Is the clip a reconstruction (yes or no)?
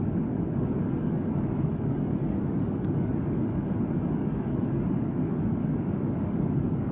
yes